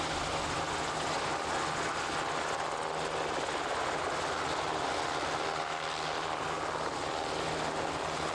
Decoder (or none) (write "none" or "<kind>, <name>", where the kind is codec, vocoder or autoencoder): none